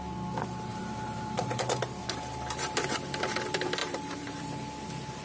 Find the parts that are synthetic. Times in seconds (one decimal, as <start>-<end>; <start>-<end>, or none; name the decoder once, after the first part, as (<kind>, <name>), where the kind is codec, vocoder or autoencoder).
0.7-1.6 (vocoder, BigVGAN v2); 3.8-4.4